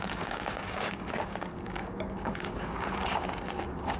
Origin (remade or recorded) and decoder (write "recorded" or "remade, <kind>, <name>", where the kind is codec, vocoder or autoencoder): remade, codec, DAC